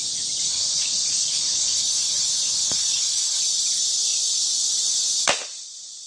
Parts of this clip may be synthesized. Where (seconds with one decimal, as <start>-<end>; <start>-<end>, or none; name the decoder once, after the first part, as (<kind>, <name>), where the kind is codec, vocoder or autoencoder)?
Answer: 0.5-3.4 (codec, HILCodec)